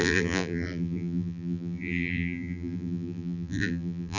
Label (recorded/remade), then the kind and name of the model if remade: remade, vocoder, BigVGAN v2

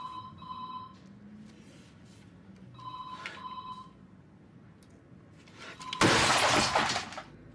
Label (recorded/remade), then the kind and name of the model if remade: recorded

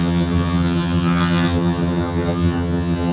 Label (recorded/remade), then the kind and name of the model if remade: remade, vocoder, HiFi-GAN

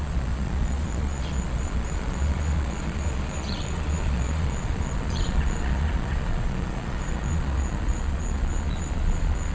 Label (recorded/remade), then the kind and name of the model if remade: remade, vocoder, Vocos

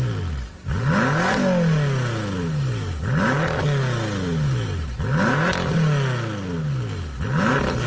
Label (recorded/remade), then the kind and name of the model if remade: recorded